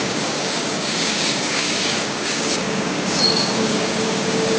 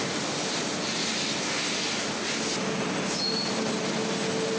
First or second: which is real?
second